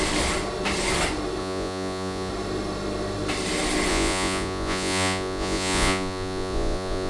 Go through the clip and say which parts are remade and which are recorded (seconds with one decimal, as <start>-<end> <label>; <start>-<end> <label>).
0.0-1.4 recorded; 1.4-2.3 remade; 2.3-3.9 recorded; 3.9-7.1 remade